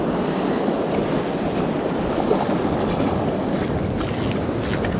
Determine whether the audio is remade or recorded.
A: recorded